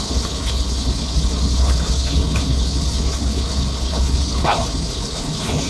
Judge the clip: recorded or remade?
remade